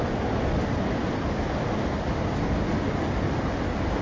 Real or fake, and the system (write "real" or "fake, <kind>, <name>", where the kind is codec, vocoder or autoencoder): real